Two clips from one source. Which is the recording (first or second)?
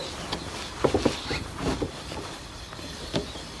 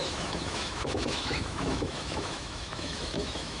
first